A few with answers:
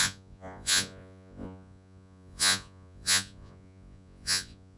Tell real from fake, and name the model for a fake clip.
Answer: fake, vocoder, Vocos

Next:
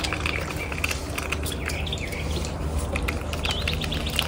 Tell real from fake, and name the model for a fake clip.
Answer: real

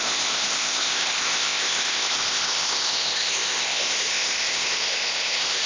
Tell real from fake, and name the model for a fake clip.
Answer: fake, codec, ZipCodec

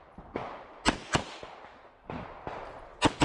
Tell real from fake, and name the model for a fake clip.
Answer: real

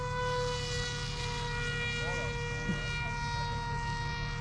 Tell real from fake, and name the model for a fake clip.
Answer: real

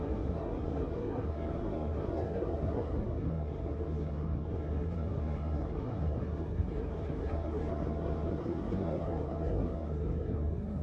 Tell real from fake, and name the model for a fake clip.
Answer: fake, codec, SNAC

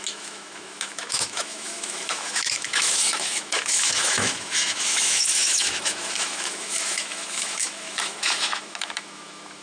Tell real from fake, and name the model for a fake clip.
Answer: fake, autoencoder, DAC-VAE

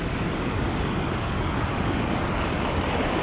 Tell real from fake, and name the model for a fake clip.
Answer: fake, codec, DAC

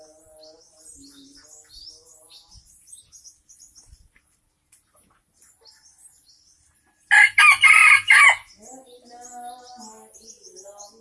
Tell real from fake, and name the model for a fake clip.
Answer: real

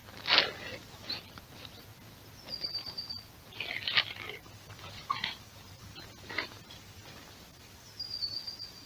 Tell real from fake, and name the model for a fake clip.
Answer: real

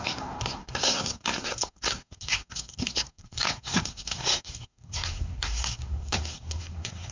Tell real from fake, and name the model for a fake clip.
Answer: fake, codec, SNAC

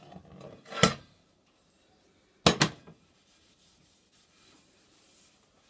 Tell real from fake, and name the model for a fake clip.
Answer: real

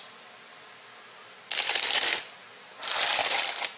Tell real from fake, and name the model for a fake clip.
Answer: real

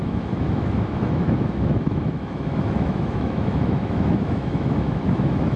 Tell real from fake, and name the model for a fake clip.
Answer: fake, autoencoder, DAC-VAE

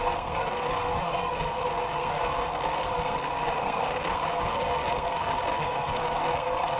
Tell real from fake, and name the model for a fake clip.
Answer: fake, codec, SNAC